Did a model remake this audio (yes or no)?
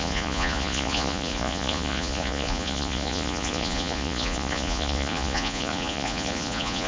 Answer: yes